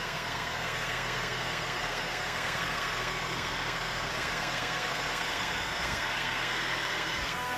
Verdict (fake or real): fake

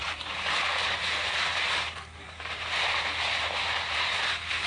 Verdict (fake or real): fake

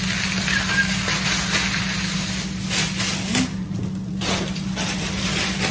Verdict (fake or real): real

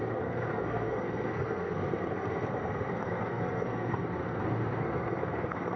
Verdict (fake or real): fake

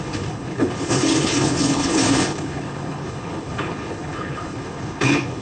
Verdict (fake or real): fake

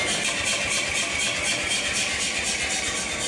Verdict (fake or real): real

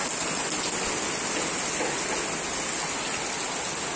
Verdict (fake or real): real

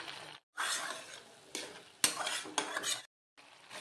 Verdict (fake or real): real